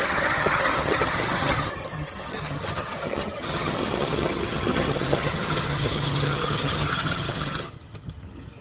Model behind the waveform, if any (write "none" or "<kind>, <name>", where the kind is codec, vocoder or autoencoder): vocoder, HiFi-GAN